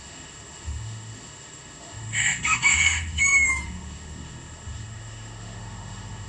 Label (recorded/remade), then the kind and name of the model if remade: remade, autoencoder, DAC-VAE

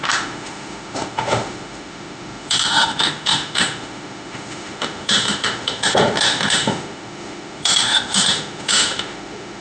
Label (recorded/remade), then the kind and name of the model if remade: remade, autoencoder, DAC-VAE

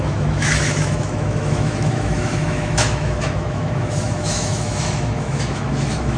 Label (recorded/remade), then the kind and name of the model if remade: remade, autoencoder, DAC-VAE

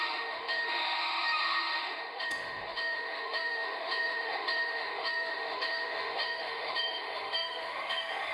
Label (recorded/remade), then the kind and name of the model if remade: remade, autoencoder, DAC-VAE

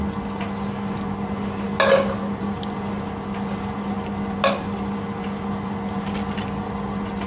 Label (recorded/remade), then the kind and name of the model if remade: recorded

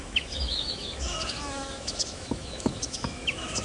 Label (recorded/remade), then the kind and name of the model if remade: remade, autoencoder, DAC-VAE